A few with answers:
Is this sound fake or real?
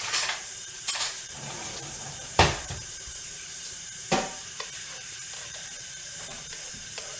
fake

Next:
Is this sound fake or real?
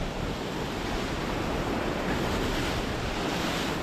real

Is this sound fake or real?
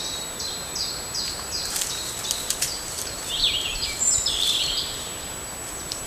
fake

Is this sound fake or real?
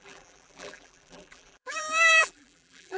fake